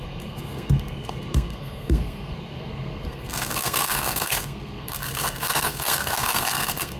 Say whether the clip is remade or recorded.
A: remade